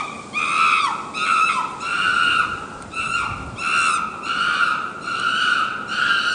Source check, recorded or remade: recorded